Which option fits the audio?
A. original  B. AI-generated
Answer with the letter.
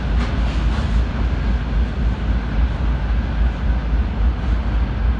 A